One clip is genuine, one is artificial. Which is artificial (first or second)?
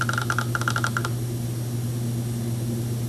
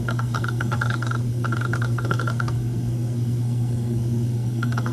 second